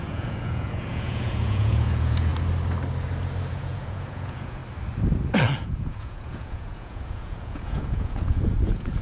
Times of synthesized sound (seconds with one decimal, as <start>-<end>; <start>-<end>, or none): 0.0-2.3; 3.5-4.6; 5.6-9.0